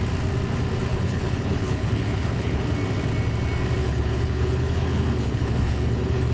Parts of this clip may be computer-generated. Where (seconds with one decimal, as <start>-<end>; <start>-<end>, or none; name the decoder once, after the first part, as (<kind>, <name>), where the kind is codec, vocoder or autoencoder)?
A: 0.9-2.6 (codec, HILCodec); 3.8-6.3